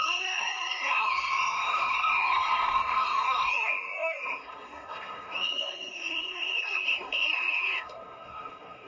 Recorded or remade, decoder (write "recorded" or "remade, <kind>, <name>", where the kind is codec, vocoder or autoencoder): remade, codec, SNAC